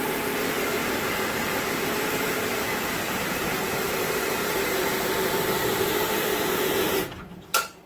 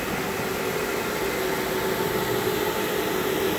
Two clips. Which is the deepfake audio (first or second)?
first